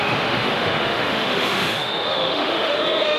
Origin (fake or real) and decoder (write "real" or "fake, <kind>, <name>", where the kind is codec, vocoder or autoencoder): fake, autoencoder, DAC-VAE